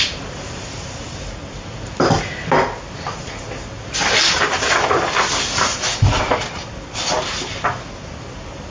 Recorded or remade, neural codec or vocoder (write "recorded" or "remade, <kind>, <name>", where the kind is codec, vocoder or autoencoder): recorded